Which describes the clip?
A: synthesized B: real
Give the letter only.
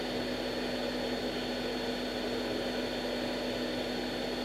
B